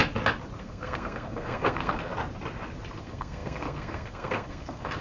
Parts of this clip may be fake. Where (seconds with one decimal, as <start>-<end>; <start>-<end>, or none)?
0.6-2.1; 3.0-5.0